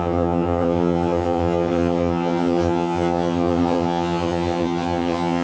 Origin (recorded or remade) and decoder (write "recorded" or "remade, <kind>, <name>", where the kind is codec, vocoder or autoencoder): remade, vocoder, HiFi-GAN